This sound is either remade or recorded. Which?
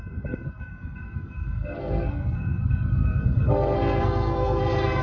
remade